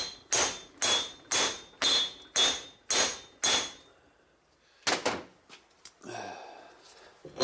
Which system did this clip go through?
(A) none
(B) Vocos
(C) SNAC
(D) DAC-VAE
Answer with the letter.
A